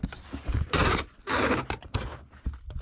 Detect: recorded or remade recorded